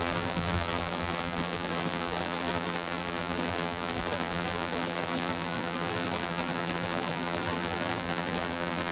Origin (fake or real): fake